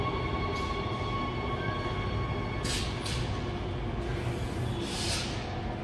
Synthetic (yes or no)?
no